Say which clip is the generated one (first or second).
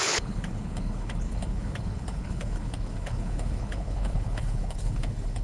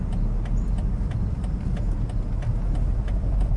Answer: first